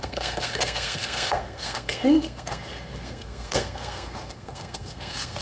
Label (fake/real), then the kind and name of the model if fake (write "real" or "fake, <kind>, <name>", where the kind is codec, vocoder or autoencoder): fake, codec, SNAC